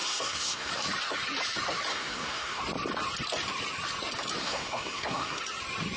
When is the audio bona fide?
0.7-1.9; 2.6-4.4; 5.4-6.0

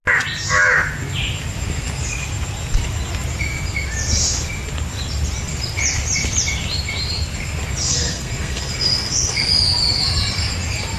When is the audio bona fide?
0.0-7.9; 9.5-11.0

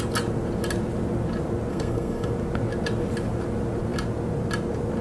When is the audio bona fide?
0.0-1.7; 2.3-5.0

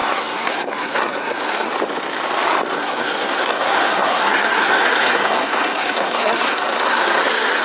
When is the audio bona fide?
1.7-2.8

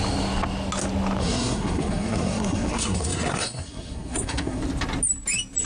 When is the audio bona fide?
0.0-1.2; 4.6-5.7

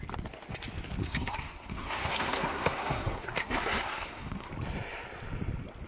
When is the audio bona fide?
0.0-1.0; 4.5-5.9

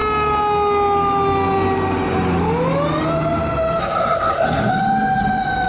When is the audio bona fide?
0.0-3.8; 4.7-5.7